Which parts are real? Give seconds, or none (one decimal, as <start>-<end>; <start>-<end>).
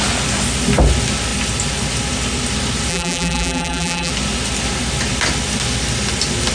0.0-2.9; 4.1-6.5